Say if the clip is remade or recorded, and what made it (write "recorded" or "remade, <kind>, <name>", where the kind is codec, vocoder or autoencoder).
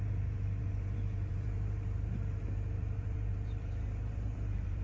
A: remade, vocoder, BigVGAN v2